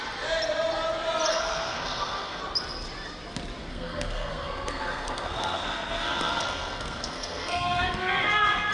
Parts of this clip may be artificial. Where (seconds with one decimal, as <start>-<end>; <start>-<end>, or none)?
1.3-2.4; 3.7-8.7